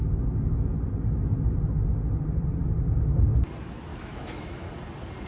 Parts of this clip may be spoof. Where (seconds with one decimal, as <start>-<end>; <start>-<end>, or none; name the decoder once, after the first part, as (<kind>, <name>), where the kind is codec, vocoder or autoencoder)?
3.9-4.7 (autoencoder, DAC-VAE)